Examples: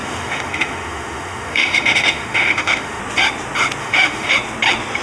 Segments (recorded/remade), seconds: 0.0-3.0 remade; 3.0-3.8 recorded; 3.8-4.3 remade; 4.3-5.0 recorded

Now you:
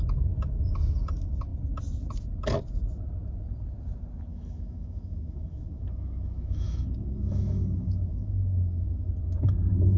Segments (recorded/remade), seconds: 0.0-4.3 recorded; 4.3-9.1 remade; 9.1-10.0 recorded